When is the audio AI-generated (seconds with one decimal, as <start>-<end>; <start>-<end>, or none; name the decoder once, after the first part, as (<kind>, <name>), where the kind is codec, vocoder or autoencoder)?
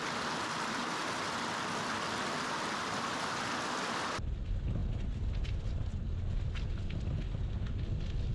none